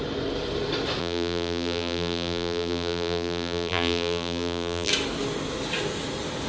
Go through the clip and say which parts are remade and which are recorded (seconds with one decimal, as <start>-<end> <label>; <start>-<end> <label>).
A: 0.0-1.0 recorded; 1.0-4.9 remade; 4.9-6.5 recorded